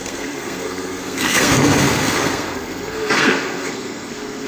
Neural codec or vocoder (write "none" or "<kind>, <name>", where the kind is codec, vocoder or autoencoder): codec, SNAC